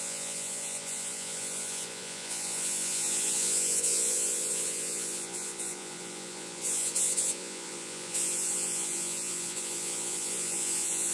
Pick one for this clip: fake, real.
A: fake